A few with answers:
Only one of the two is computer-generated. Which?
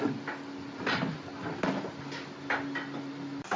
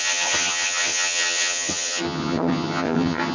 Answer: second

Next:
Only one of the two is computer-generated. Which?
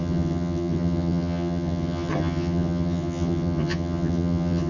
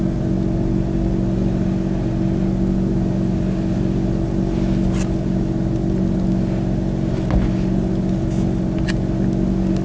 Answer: first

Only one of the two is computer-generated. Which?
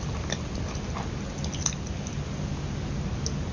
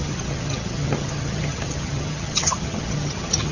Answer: second